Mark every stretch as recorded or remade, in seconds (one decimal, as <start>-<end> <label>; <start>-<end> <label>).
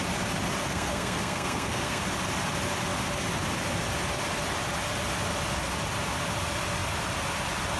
0.0-0.6 recorded; 0.6-2.0 remade; 2.0-7.8 recorded